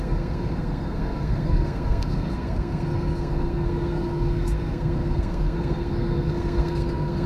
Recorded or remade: remade